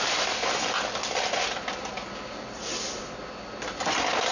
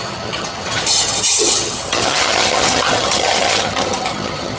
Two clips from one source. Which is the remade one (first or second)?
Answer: second